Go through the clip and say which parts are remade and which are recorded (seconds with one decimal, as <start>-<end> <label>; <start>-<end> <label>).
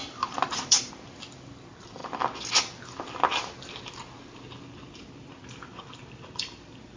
0.0-0.9 remade; 0.9-7.0 recorded